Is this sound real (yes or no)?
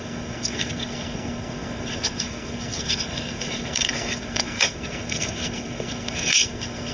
no